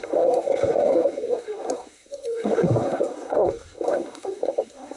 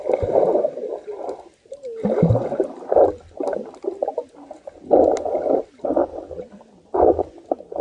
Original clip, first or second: second